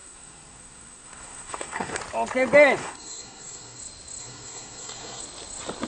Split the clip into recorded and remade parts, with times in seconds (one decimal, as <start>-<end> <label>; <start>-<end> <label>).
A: 0.0-2.0 remade; 2.0-2.8 recorded; 2.8-3.8 remade; 3.8-4.2 recorded; 4.2-5.2 remade; 5.2-5.9 recorded

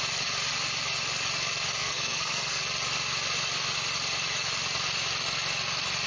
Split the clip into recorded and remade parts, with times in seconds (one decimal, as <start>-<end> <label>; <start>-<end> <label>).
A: 0.0-1.8 recorded; 1.8-2.6 remade; 2.6-6.1 recorded

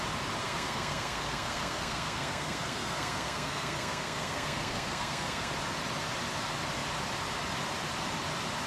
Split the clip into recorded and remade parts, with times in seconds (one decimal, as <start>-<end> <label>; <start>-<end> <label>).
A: 0.0-0.4 recorded; 0.4-5.5 remade; 5.5-8.7 recorded